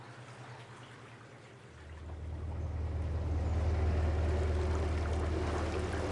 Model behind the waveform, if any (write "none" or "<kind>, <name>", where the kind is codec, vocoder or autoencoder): none